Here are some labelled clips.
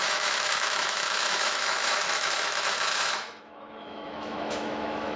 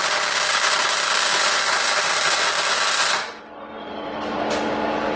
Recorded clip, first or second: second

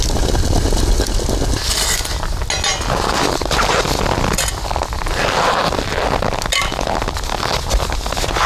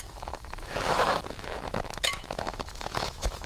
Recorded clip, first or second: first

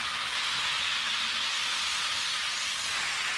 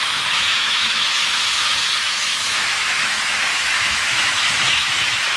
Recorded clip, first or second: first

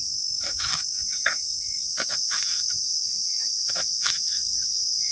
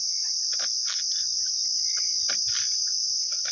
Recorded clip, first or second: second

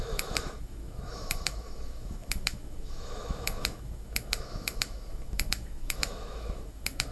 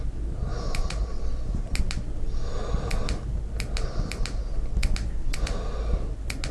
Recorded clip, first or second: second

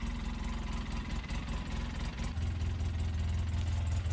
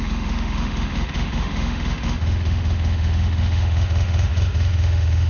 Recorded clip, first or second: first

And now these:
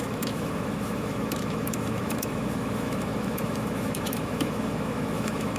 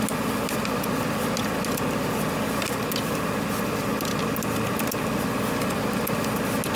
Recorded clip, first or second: second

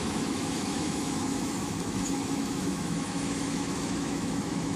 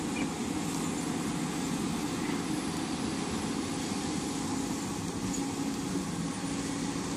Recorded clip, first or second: second